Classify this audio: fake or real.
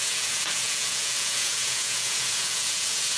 fake